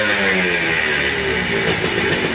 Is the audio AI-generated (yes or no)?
no